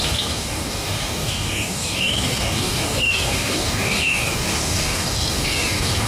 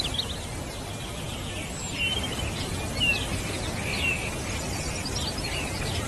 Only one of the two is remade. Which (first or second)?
first